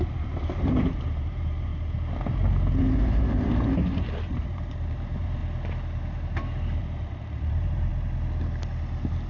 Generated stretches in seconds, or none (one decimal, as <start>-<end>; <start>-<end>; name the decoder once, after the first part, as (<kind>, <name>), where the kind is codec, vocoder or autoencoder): 0.0-1.7 (vocoder, BigVGAN v2); 3.0-5.4; 6.8-7.9